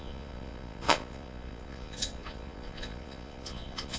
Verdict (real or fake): fake